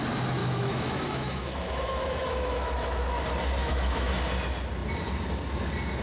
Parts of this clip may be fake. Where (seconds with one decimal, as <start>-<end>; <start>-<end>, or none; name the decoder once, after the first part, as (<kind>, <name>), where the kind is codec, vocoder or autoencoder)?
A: 0.4-3.2 (autoencoder, DAC-VAE); 3.6-4.1